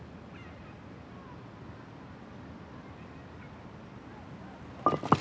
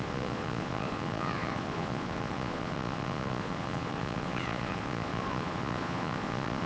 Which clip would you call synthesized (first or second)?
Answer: second